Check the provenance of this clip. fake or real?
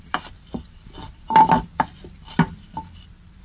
real